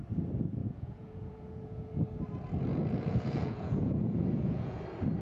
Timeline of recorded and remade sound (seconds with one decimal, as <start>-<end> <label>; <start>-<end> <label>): 0.0-0.6 recorded; 0.6-1.9 remade; 1.9-2.7 recorded; 2.7-4.8 remade; 4.8-5.2 recorded

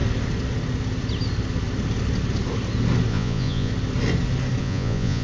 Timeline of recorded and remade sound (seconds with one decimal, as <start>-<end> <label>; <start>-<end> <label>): 0.0-3.1 recorded; 3.1-3.7 remade; 3.7-4.6 recorded; 4.6-5.2 remade

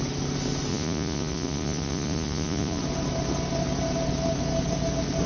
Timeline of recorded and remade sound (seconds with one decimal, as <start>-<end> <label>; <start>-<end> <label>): 0.0-0.7 recorded; 0.7-2.8 remade; 2.8-5.3 recorded

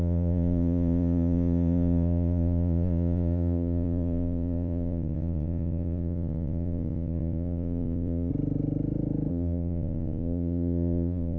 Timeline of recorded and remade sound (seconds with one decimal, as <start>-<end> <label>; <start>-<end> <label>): 0.0-8.3 remade; 8.3-9.3 recorded; 9.3-11.4 remade

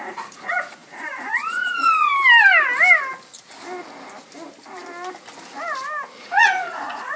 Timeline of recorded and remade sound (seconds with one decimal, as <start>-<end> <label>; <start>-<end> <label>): 0.0-2.1 remade; 2.1-6.2 recorded; 6.2-7.2 remade

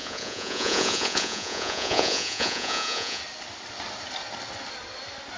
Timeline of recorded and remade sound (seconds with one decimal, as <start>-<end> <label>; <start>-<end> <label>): 0.0-3.2 remade; 3.2-5.4 recorded

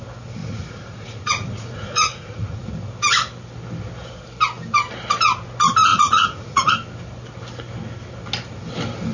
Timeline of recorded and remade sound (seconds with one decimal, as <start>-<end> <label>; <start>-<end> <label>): 0.0-0.4 recorded; 0.4-2.7 remade; 2.7-5.9 recorded; 5.9-6.7 remade; 6.7-9.1 recorded

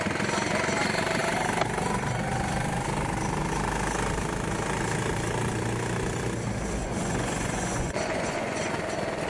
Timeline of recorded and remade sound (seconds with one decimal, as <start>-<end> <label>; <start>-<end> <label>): 0.0-6.8 recorded; 6.8-8.7 remade; 8.7-9.3 recorded